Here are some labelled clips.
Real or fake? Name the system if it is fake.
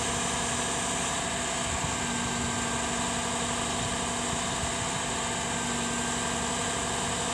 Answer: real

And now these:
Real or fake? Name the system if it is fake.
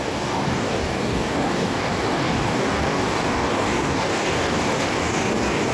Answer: fake, codec, DAC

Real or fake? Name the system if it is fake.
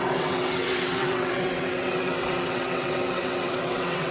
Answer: fake, vocoder, WaveNeXt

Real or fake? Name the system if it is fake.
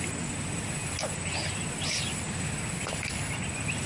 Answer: real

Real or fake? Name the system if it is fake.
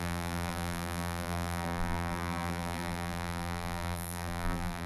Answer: fake, vocoder, BigVGAN v2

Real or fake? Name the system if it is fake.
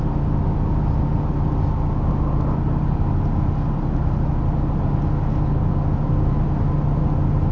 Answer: real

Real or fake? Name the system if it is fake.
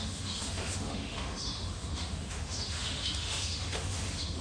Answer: fake, autoencoder, DAC-VAE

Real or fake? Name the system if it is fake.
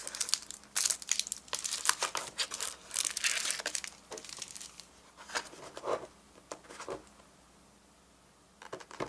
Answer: real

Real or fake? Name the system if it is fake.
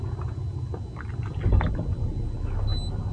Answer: real